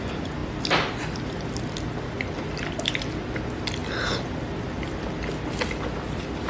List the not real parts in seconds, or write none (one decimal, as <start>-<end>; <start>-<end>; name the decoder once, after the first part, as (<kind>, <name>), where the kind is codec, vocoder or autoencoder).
none